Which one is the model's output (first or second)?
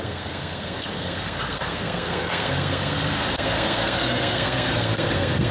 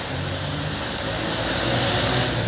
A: first